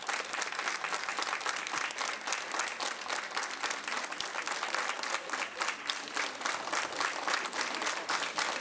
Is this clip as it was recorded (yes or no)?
yes